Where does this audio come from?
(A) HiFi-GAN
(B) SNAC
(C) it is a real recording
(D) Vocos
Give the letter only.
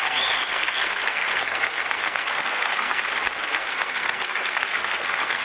B